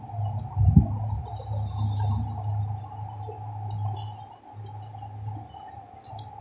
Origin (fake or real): real